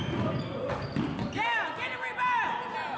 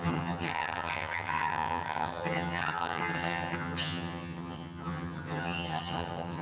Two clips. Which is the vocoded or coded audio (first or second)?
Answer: second